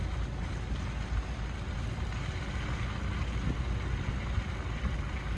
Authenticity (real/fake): real